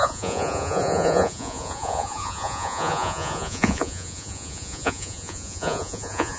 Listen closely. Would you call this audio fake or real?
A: fake